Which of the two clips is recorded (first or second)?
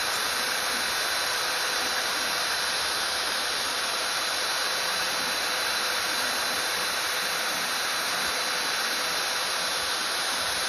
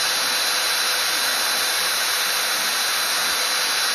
second